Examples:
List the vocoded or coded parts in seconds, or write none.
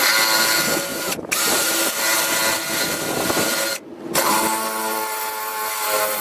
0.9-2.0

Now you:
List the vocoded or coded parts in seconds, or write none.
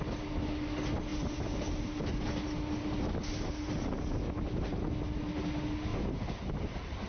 5.9-6.5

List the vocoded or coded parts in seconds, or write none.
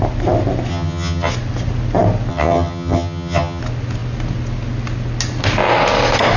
0.7-1.3; 2.3-3.6